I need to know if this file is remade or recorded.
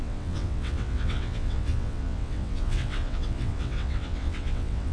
remade